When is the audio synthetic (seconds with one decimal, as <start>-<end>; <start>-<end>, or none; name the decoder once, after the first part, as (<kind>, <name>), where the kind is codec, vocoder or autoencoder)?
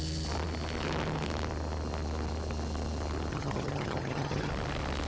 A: 3.3-4.5 (vocoder, HiFi-GAN)